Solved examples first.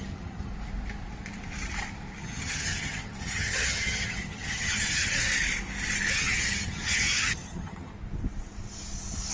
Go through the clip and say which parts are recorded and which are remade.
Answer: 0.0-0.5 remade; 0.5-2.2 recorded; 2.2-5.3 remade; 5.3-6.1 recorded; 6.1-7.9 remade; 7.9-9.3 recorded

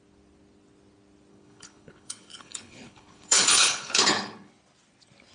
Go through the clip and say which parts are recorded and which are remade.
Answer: 0.0-1.3 recorded; 1.3-4.5 remade; 4.5-5.3 recorded

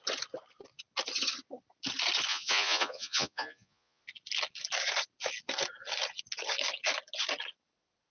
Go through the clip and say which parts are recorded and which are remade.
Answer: 0.0-2.3 recorded; 2.3-4.0 remade; 4.0-8.1 recorded